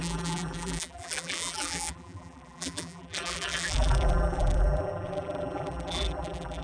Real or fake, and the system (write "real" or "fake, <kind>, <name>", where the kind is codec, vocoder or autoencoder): fake, vocoder, BigVGAN v2